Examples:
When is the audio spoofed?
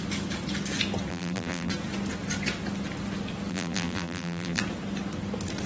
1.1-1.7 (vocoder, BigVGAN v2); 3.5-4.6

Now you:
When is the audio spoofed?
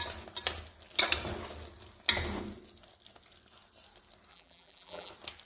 4.3-5.1 (vocoder, BigVGAN v2)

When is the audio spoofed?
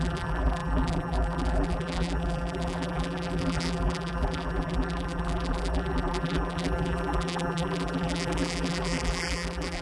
0.0-9.8 (vocoder, BigVGAN v2)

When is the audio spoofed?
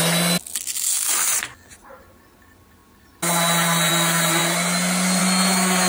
none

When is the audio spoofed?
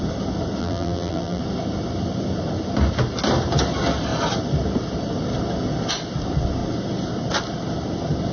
0.6-1.4 (vocoder, BigVGAN v2)